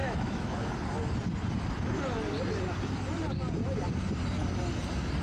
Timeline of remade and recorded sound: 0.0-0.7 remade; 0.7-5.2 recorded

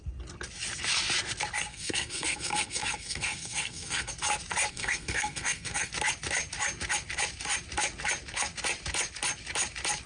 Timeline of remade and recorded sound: 0.0-1.7 recorded; 1.7-4.1 remade; 4.1-4.7 recorded; 4.7-5.9 remade; 5.9-10.1 recorded